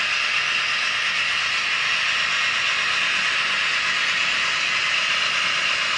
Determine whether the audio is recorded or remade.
recorded